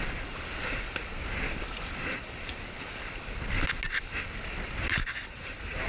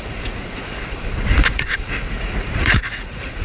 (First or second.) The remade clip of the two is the second